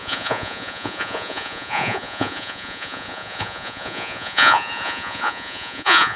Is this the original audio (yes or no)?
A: no